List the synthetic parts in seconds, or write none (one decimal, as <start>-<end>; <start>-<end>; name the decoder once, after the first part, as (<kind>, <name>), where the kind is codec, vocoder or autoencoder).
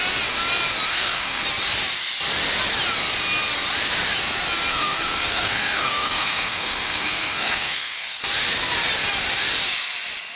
0.9-1.4 (codec, SNAC); 4.7-8.2